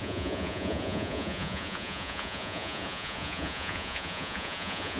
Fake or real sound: fake